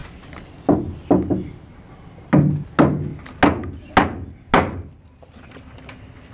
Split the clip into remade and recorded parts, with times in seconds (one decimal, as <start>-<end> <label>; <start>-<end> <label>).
0.0-6.3 recorded